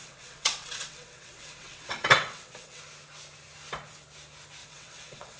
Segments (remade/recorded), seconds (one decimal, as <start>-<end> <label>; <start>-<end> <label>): 0.0-2.8 remade; 2.8-4.6 recorded; 4.6-5.4 remade